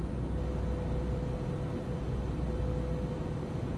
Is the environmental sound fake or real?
real